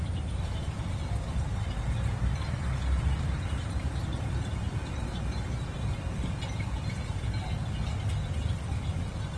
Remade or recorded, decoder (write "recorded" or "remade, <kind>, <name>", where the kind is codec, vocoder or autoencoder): remade, vocoder, BigVGAN v2